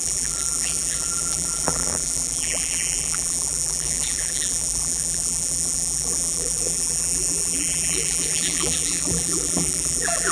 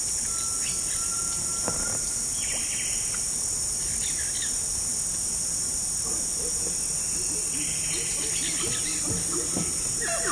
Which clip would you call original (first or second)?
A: second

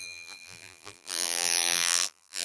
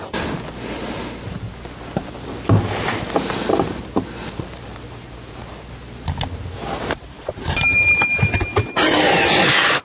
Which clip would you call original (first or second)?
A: second